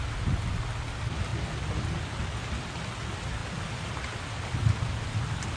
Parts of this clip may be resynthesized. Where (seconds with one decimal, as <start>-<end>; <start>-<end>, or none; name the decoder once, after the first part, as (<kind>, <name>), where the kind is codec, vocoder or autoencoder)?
none

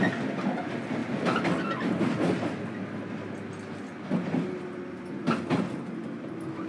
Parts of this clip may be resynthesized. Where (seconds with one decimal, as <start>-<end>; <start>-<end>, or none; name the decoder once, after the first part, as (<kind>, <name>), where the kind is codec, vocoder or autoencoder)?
none